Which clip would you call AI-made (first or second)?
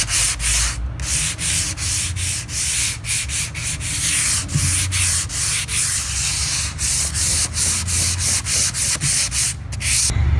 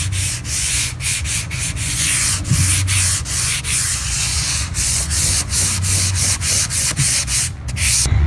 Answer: second